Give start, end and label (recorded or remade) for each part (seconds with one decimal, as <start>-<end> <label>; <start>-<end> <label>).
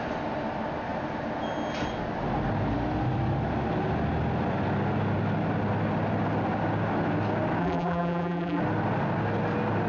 0.0-7.6 recorded; 7.6-8.6 remade; 8.6-9.9 recorded